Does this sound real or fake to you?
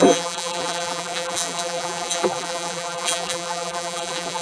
fake